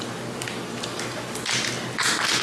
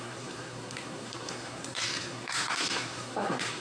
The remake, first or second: second